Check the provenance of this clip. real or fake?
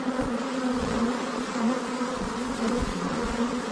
fake